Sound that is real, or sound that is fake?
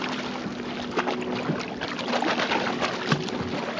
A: real